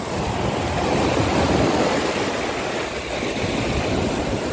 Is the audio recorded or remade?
recorded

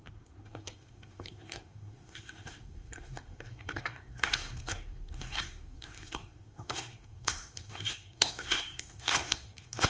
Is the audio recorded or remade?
remade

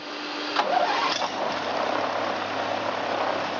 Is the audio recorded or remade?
recorded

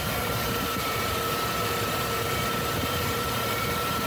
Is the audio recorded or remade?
remade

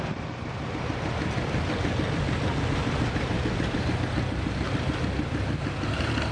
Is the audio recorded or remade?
recorded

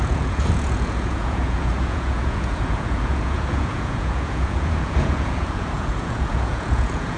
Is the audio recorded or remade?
remade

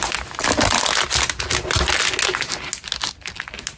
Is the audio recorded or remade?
recorded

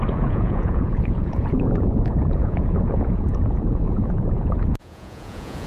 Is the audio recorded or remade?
remade